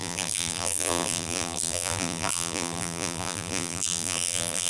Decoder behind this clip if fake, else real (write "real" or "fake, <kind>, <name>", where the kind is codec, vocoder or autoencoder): fake, vocoder, BigVGAN v2